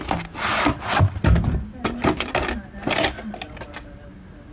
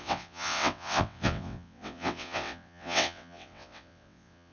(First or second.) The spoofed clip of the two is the second